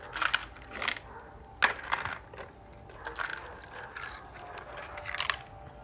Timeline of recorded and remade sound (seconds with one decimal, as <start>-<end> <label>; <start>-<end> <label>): 0.0-5.8 recorded